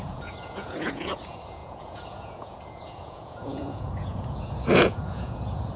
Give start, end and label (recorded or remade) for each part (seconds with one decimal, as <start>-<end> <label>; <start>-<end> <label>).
0.0-5.8 remade